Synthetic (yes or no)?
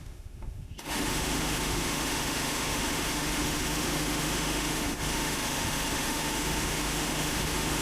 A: yes